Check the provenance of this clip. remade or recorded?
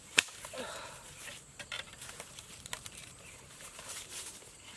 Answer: remade